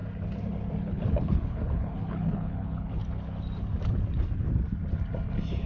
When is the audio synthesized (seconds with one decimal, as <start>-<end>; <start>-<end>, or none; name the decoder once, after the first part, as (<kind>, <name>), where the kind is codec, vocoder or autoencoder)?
0.8-3.0 (codec, HILCodec)